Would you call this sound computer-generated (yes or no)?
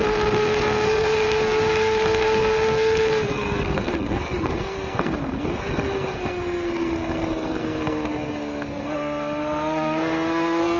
yes